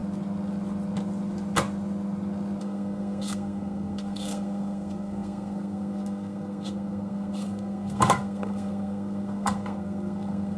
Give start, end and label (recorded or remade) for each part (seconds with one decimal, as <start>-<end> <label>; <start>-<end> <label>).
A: 0.0-2.6 recorded; 2.6-10.6 remade